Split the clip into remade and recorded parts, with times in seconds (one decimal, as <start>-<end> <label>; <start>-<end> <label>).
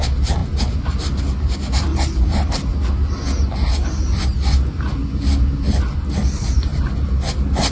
0.0-7.7 recorded